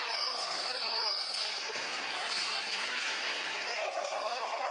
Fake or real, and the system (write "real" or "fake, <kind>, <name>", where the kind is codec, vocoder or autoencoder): fake, codec, SNAC